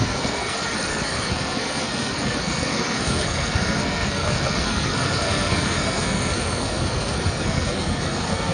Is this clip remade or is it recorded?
remade